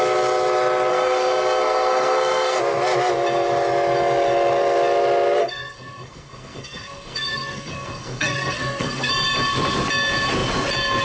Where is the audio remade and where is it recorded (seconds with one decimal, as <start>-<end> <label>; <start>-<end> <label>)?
0.0-0.9 recorded; 0.9-2.6 remade; 2.6-5.4 recorded; 5.4-9.1 remade; 9.1-11.0 recorded